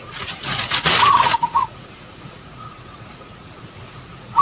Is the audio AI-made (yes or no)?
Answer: yes